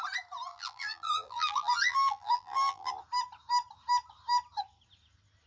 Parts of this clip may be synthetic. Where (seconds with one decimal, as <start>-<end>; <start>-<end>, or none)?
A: 0.5-2.9